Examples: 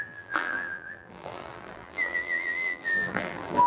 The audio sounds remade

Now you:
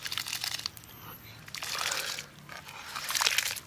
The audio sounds recorded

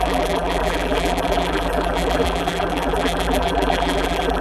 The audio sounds remade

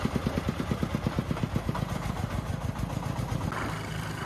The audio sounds remade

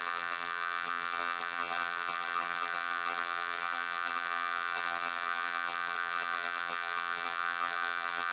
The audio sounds remade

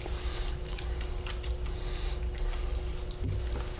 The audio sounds recorded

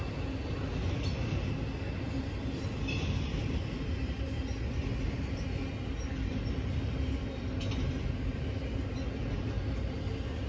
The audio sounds recorded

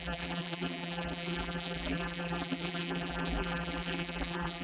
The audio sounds remade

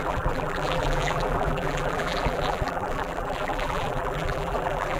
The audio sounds remade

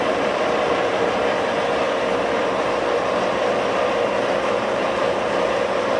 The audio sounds remade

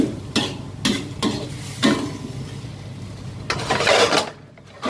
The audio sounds recorded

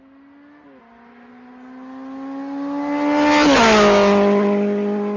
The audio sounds recorded